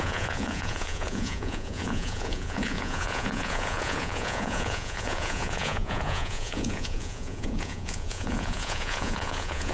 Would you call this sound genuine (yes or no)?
no